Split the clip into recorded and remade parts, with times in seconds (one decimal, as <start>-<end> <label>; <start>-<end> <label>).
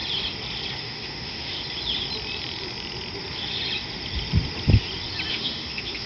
0.0-0.8 recorded; 0.8-1.6 remade; 1.6-5.3 recorded; 5.3-6.1 remade